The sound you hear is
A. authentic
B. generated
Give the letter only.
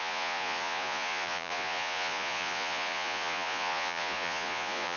B